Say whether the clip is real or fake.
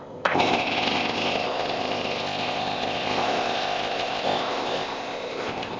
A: fake